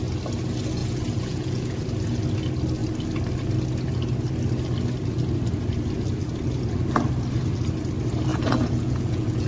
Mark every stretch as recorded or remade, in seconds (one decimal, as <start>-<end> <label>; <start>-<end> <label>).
0.0-0.8 recorded; 0.8-1.8 remade; 1.8-8.3 recorded; 8.3-9.5 remade